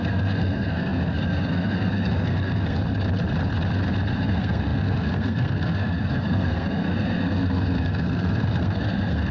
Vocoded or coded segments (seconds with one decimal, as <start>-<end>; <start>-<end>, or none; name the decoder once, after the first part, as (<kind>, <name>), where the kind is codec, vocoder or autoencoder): 0.0-2.8 (codec, SNAC); 4.2-9.3